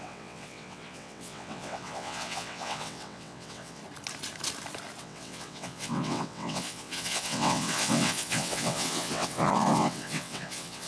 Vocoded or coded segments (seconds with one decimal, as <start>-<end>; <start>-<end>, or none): 0.0-3.8; 5.0-10.9